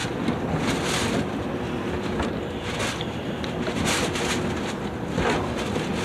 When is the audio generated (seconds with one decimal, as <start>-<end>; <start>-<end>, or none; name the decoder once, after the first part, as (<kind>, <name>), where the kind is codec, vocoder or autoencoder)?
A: none